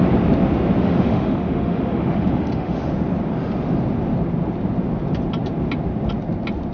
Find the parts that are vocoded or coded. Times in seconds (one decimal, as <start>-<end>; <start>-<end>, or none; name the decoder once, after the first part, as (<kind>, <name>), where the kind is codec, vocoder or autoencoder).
0.8-2.9 (autoencoder, DAC-VAE)